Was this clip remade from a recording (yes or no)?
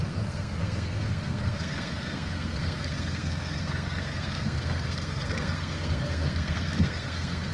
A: yes